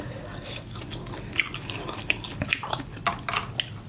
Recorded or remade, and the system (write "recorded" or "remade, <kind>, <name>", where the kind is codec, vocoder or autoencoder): recorded